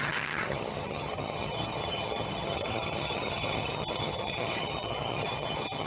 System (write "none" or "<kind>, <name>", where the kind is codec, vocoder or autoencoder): vocoder, HiFi-GAN